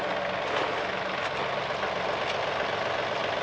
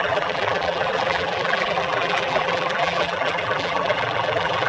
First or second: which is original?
first